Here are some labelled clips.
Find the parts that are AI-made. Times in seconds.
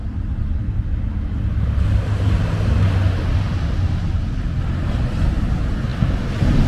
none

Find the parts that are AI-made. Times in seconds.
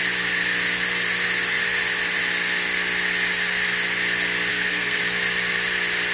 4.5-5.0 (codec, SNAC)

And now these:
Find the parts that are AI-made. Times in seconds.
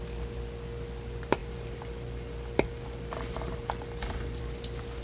1.4-4.4 (vocoder, BigVGAN v2)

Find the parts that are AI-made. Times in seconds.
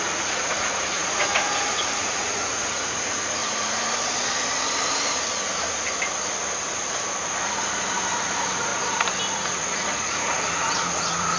0.0-3.4 (vocoder, Vocos); 8.2-8.7; 9.3-11.4